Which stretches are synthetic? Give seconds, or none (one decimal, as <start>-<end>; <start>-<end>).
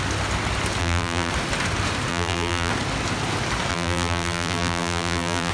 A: 0.8-1.3; 2.1-2.7; 3.7-5.5